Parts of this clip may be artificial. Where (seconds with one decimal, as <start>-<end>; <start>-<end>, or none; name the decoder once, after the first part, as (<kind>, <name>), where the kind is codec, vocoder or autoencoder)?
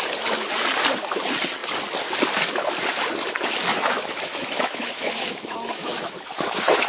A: 3.7-6.9 (autoencoder, DAC-VAE)